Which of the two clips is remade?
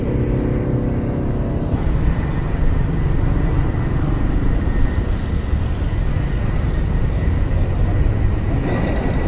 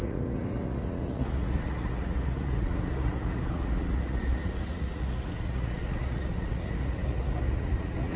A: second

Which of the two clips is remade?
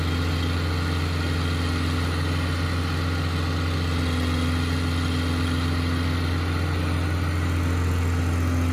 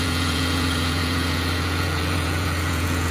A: second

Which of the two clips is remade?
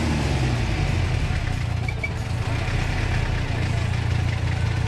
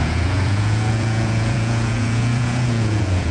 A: second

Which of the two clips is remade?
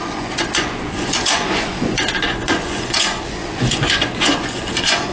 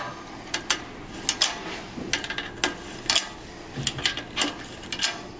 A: first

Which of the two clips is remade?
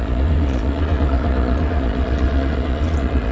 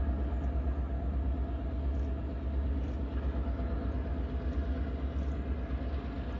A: first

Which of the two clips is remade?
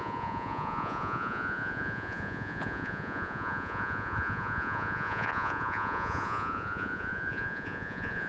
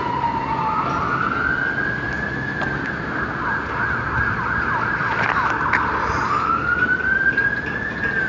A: first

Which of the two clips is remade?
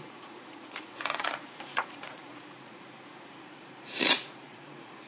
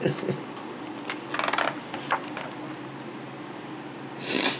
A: first